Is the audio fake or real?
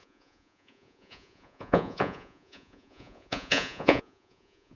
fake